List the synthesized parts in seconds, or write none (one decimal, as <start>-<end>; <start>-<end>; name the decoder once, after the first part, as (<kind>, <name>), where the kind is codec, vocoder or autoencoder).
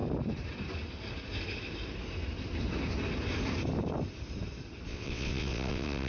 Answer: 4.9-6.1 (vocoder, WaveNeXt)